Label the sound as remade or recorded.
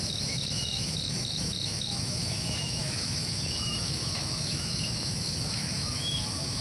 remade